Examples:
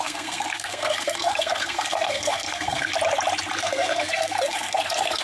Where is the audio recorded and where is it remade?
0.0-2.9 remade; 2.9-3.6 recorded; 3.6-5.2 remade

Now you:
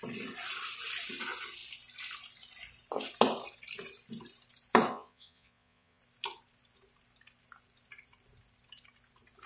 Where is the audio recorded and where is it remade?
0.0-4.9 recorded; 4.9-6.0 remade; 6.0-9.5 recorded

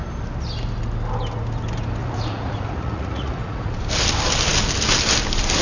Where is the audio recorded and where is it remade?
0.0-2.0 recorded; 2.0-3.7 remade; 3.7-5.6 recorded

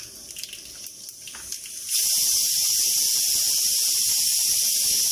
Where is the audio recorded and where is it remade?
0.0-2.6 remade; 2.6-5.1 recorded